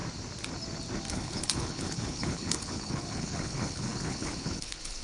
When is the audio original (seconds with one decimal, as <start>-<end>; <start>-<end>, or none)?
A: 0.0-1.1